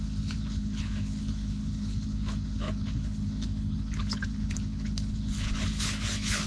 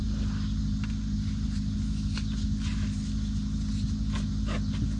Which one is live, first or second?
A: second